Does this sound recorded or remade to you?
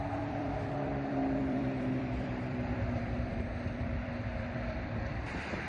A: remade